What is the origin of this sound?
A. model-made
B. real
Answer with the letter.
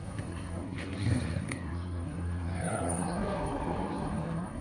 A